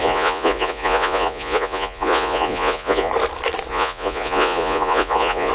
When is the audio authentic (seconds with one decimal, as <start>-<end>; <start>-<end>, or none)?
3.1-3.7